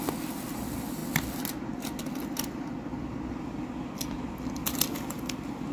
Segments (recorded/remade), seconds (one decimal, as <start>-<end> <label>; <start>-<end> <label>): 0.0-5.7 recorded